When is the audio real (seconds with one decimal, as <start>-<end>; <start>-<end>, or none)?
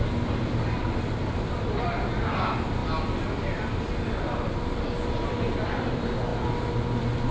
0.0-7.3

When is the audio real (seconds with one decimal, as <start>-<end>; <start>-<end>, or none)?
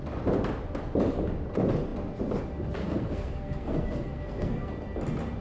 0.0-2.8; 4.7-5.4